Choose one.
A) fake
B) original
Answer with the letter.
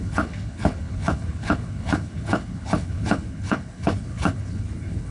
A